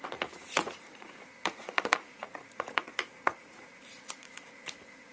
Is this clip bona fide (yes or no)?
no